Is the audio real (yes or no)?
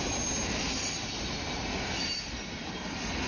yes